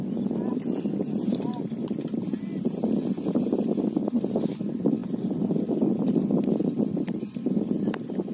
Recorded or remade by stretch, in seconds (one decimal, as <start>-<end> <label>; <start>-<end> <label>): 0.0-5.0 recorded; 5.0-5.8 remade; 5.8-8.3 recorded